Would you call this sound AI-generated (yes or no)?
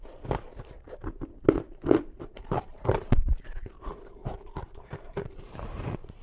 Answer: yes